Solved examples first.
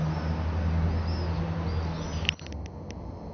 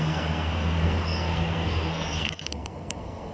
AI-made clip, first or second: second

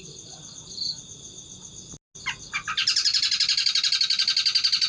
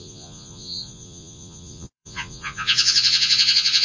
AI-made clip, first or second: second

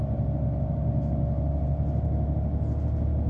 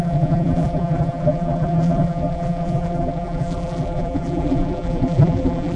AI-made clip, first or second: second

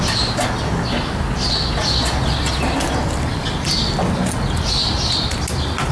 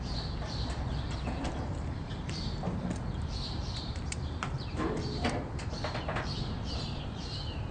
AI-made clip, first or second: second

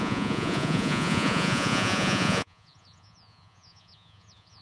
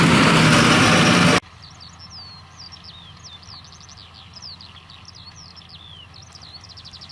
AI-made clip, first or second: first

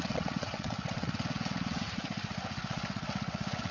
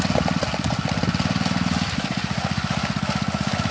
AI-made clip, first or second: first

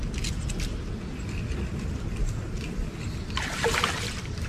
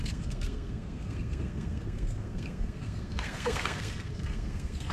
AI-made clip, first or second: second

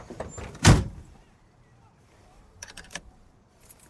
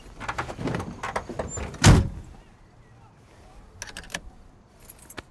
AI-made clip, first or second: first